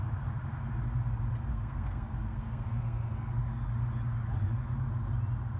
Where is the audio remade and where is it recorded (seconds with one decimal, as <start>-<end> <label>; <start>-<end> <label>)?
0.0-1.5 recorded; 1.5-3.3 remade; 3.3-5.6 recorded